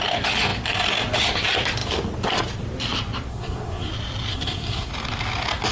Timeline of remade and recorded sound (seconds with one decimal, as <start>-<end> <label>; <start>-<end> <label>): 0.0-3.3 recorded; 3.3-3.9 remade; 3.9-4.3 recorded; 4.3-4.9 remade; 4.9-5.7 recorded